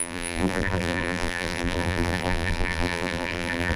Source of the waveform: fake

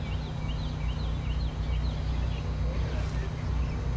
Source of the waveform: real